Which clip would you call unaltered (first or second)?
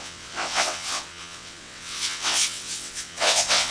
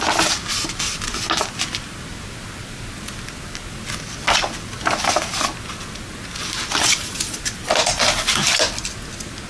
second